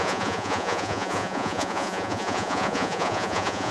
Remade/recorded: remade